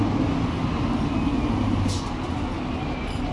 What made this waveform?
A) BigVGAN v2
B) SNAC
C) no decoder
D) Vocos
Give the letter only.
C